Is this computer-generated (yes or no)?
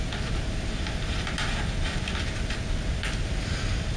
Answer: no